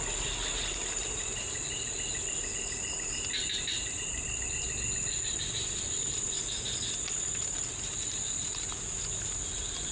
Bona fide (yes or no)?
yes